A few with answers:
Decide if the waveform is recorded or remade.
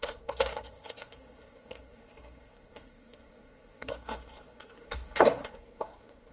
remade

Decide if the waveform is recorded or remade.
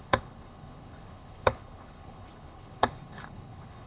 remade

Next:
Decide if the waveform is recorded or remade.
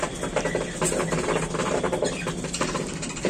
recorded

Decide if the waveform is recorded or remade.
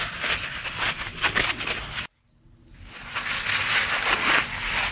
recorded